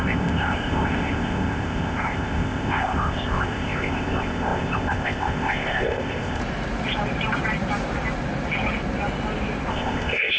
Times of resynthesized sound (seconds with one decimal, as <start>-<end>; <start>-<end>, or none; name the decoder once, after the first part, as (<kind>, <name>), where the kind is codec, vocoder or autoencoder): 0.0-6.4 (codec, ZipCodec); 9.7-10.4